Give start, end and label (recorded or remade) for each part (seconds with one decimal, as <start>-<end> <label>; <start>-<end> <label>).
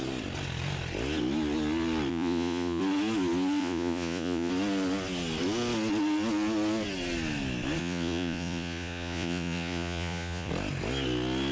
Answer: 0.0-2.1 recorded; 2.1-2.8 remade; 2.8-3.6 recorded; 3.6-4.5 remade; 4.5-7.8 recorded; 7.8-10.5 remade; 10.5-11.5 recorded